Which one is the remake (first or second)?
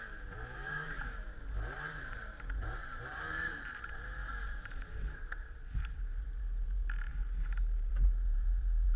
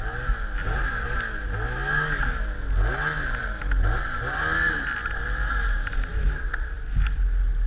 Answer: first